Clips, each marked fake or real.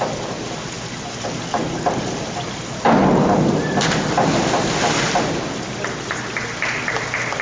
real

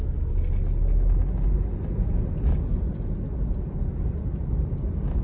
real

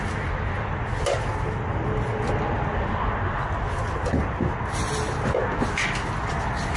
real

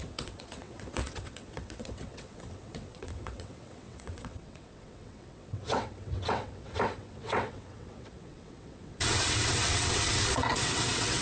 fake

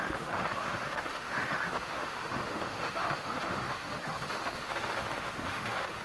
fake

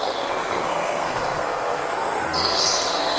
fake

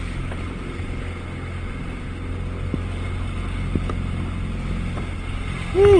real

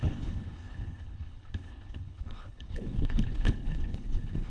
fake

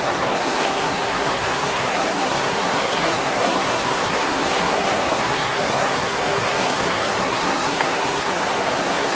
fake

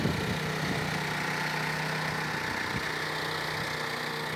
real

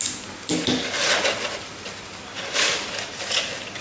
real